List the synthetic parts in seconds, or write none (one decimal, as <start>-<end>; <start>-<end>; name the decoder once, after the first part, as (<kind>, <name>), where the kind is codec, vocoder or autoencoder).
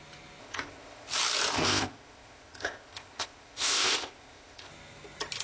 0.4-1.1 (codec, ZipCodec); 1.5-4.7